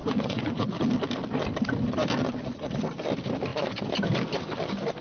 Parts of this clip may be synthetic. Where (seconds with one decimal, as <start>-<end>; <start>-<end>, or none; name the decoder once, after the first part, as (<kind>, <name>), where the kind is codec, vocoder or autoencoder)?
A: 0.0-0.9 (vocoder, Vocos); 2.4-2.9